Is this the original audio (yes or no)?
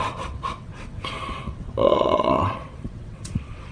no